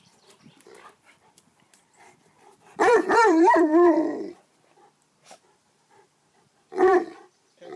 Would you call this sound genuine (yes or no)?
no